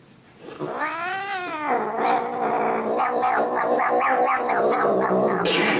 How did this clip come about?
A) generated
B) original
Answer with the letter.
B